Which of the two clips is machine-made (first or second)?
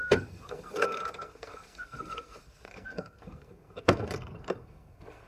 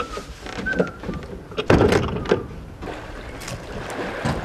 first